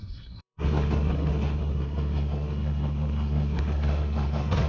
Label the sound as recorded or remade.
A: remade